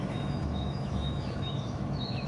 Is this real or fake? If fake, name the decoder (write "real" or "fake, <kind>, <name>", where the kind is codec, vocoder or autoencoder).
fake, autoencoder, DAC-VAE